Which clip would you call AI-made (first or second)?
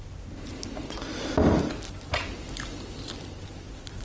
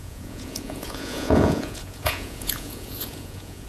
second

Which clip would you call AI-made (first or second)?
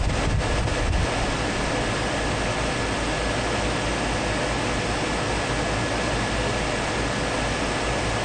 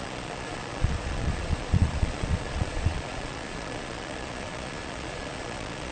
second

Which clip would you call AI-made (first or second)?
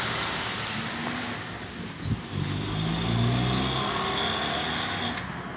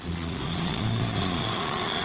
second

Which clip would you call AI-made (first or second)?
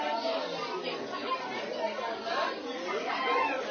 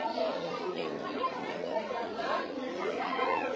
second